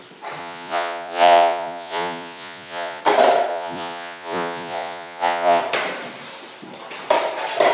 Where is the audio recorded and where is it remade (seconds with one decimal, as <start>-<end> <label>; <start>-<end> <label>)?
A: 0.0-0.4 recorded; 0.4-3.0 remade; 3.0-3.5 recorded; 3.5-5.6 remade; 5.6-7.7 recorded